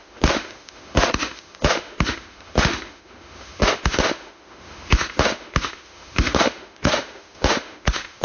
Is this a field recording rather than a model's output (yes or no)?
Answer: no